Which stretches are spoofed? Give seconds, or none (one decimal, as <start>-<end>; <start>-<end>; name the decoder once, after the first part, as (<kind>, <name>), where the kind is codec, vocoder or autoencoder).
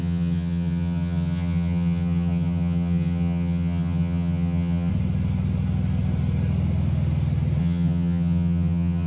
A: 0.0-4.9 (vocoder, HiFi-GAN); 7.6-9.1